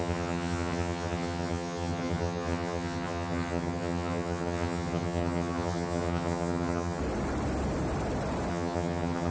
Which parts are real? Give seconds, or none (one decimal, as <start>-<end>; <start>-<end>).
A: 7.0-8.5